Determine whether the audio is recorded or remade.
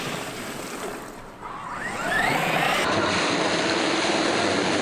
recorded